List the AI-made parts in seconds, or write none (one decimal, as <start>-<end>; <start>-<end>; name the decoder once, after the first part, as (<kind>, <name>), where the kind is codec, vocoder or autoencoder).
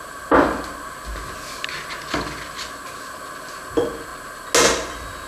none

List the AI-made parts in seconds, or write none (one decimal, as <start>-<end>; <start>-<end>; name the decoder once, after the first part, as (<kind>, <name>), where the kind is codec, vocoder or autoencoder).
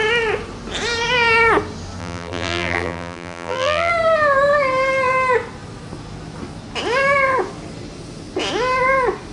2.0-3.9 (vocoder, BigVGAN v2)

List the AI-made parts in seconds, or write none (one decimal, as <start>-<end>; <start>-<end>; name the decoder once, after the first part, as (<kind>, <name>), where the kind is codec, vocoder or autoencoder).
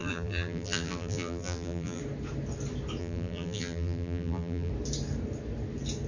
0.0-2.0 (vocoder, BigVGAN v2); 3.0-4.7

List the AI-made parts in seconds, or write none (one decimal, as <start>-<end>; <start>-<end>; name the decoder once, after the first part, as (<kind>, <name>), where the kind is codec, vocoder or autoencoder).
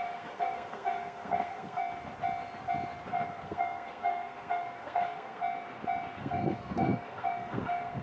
0.0-1.8 (codec, SNAC); 3.1-5.4; 6.2-8.0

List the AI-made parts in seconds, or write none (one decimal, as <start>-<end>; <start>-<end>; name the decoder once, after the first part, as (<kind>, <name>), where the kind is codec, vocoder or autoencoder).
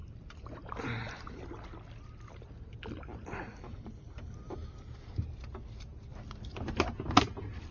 none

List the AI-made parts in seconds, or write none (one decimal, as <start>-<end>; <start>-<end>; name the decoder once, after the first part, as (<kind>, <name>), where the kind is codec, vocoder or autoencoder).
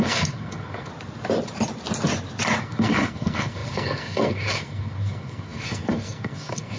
0.0-0.9 (codec, SNAC); 2.6-6.8